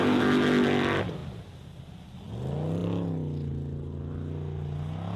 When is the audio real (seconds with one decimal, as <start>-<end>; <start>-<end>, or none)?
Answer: 0.0-5.2